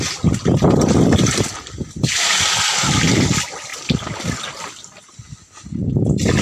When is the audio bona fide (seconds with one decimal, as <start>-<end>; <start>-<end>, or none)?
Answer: 0.0-6.4